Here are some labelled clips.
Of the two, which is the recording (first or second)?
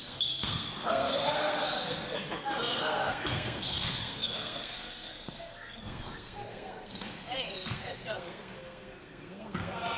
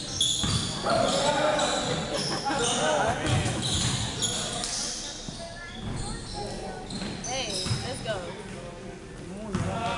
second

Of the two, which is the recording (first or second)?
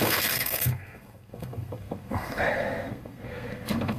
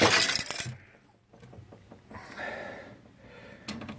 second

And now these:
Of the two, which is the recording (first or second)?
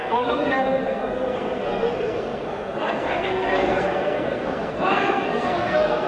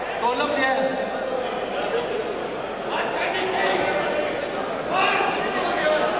second